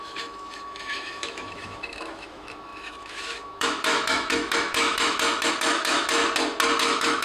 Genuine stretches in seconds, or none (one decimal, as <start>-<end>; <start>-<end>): 6.2-6.8